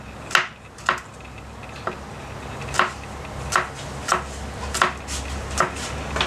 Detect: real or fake real